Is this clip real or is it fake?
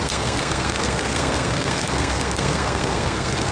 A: fake